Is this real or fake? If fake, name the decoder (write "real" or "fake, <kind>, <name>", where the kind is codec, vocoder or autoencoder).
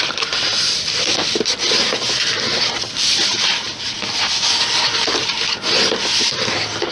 real